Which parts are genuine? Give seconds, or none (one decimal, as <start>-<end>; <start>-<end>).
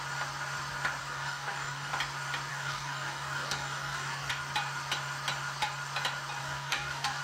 0.0-1.0; 1.9-2.5; 4.3-6.4